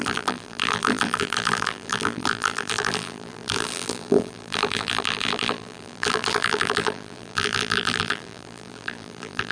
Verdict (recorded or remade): remade